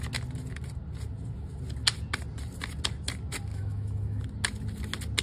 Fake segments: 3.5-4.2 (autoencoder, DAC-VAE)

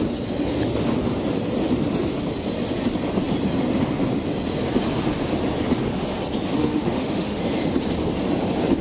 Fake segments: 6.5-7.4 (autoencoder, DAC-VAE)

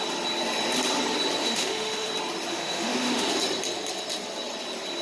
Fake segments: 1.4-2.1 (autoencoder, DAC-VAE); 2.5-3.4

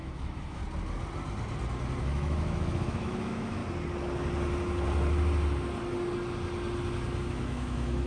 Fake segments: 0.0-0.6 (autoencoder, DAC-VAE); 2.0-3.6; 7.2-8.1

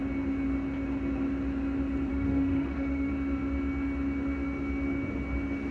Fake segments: 2.1-3.1 (autoencoder, DAC-VAE)